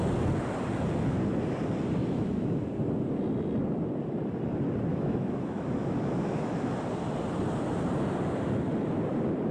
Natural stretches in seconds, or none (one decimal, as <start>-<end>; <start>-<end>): 0.0-2.0; 2.6-4.9; 6.7-9.5